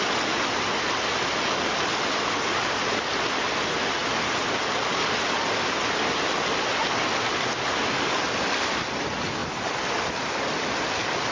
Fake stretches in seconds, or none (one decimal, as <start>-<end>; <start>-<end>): none